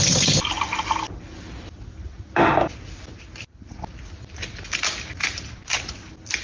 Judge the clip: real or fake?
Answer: real